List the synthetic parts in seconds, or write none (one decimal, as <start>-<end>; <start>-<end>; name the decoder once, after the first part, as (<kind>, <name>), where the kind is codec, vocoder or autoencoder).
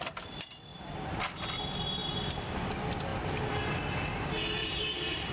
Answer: 0.7-1.2 (vocoder, BigVGAN v2); 4.6-5.3